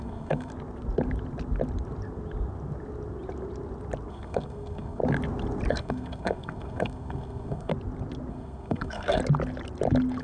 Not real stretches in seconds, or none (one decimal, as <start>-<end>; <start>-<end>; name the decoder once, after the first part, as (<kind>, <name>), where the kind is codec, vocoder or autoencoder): 0.0-0.5 (codec, SNAC); 4.1-5.0; 5.7-7.7; 8.3-9.2